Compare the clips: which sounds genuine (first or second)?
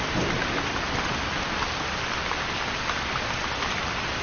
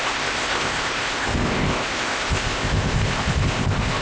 first